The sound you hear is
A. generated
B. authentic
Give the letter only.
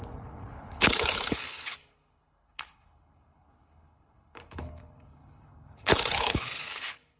A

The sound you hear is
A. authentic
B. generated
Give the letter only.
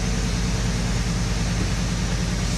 A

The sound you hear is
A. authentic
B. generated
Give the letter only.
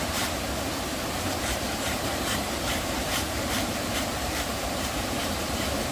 B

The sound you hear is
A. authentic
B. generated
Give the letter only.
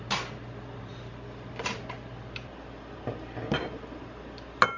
A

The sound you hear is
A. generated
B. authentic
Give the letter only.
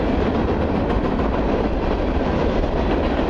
B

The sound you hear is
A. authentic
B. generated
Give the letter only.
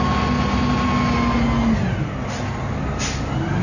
A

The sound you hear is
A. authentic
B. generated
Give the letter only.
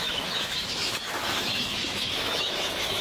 B